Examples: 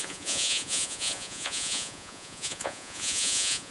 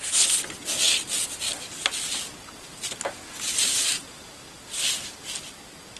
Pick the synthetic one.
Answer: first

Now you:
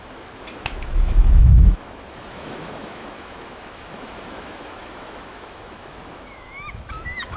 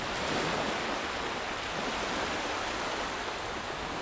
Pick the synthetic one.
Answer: first